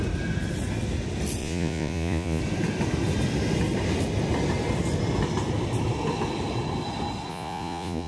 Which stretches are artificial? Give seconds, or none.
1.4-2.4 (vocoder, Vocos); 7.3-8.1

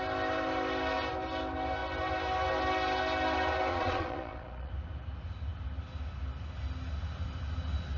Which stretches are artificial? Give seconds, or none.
3.7-4.7 (vocoder, Vocos)

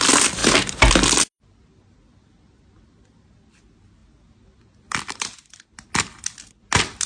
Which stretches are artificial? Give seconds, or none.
none

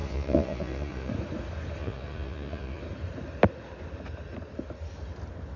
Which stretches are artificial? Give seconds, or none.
0.0-1.1 (vocoder, Vocos); 1.8-2.8